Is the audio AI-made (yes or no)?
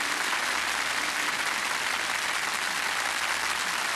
no